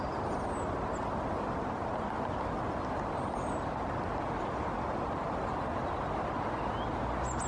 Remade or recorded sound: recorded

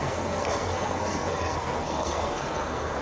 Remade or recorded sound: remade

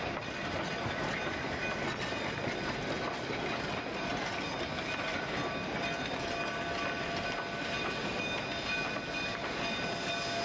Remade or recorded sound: recorded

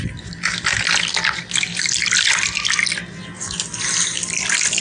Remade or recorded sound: recorded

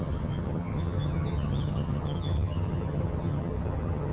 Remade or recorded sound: remade